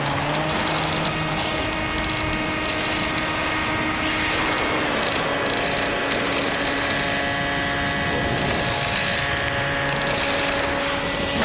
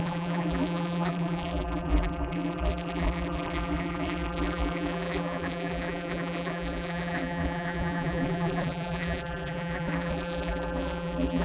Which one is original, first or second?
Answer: first